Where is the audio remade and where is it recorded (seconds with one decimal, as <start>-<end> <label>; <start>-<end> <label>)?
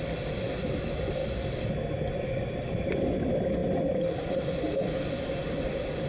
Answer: 0.0-6.1 recorded